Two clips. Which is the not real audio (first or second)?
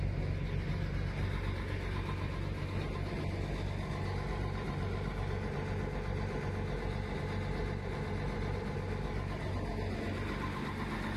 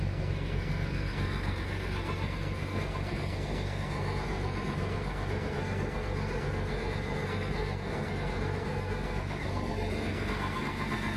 second